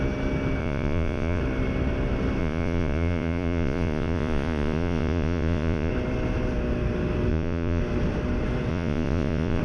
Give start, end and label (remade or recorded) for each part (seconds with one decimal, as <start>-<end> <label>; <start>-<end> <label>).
0.0-0.6 recorded; 0.6-1.4 remade; 1.4-2.4 recorded; 2.4-5.9 remade; 5.9-7.3 recorded; 7.3-7.8 remade; 7.8-8.7 recorded; 8.7-9.6 remade